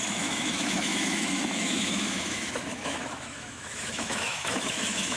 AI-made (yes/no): yes